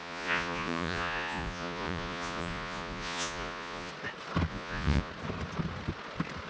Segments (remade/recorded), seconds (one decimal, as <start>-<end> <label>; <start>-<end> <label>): 0.0-3.9 remade; 3.9-4.5 recorded; 4.5-5.1 remade; 5.1-6.5 recorded